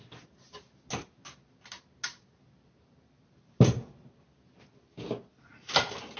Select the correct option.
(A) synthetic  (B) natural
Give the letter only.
B